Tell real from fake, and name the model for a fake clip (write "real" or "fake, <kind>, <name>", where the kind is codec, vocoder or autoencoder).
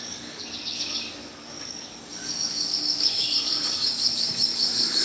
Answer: fake, codec, DAC